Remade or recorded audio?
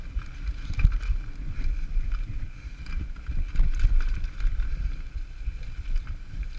recorded